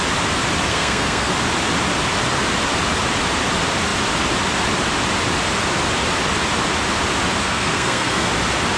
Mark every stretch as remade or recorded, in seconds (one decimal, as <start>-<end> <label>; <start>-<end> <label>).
0.0-0.7 recorded; 0.7-1.3 remade; 1.3-7.4 recorded; 7.4-8.3 remade; 8.3-8.8 recorded